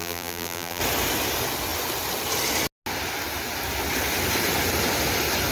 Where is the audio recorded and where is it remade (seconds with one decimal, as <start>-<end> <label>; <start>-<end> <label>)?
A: 0.0-0.8 remade; 0.8-5.5 recorded